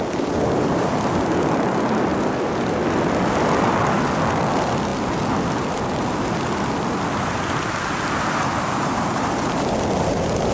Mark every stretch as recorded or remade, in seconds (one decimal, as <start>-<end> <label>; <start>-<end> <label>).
0.0-10.5 recorded